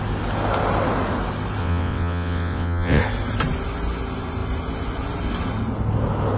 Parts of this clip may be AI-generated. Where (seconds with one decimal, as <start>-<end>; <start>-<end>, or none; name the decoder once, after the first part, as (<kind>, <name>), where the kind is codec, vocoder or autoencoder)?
1.6-3.0 (vocoder, WaveNeXt)